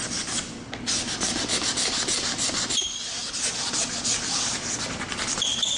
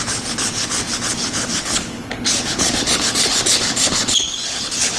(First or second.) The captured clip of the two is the first